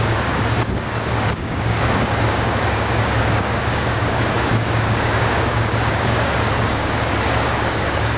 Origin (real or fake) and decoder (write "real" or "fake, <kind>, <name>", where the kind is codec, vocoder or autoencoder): fake, codec, DAC